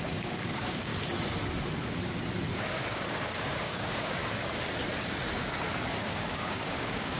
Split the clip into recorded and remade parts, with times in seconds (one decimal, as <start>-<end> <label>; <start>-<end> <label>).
0.0-0.9 remade; 0.9-2.5 recorded; 2.5-4.2 remade; 4.2-6.0 recorded; 6.0-7.2 remade